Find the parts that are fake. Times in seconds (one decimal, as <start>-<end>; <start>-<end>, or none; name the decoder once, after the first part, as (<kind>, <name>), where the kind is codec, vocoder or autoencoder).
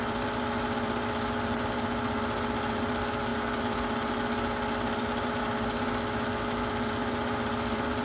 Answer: none